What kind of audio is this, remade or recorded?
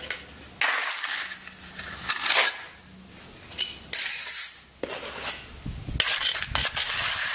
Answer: recorded